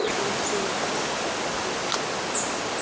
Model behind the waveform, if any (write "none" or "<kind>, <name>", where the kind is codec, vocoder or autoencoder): none